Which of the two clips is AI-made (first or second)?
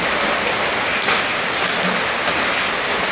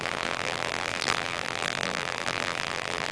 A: second